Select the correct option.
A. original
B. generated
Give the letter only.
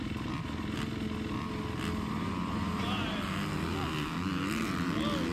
A